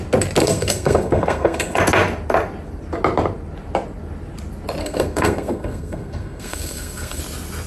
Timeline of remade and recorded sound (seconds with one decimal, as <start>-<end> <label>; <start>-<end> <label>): 0.0-0.4 recorded; 0.4-1.8 remade; 1.8-4.8 recorded; 4.8-7.2 remade; 7.2-7.7 recorded